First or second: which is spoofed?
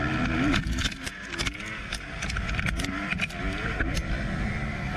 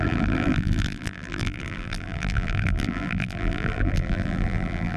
second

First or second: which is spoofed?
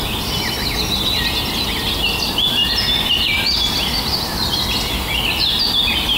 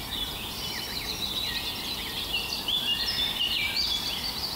second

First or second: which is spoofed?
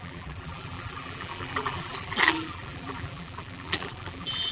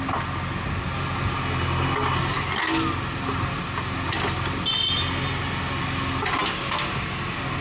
first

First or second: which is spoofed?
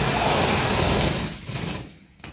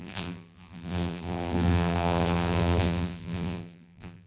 second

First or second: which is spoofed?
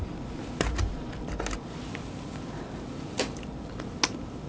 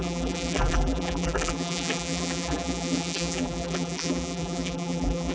second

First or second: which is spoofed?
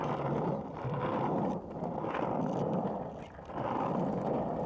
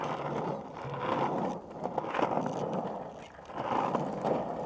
first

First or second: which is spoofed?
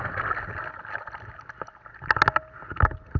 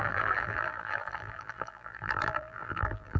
second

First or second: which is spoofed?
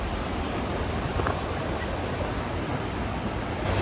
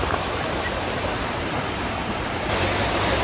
second